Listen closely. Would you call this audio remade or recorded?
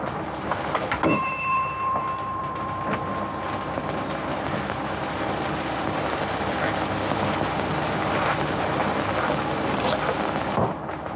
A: recorded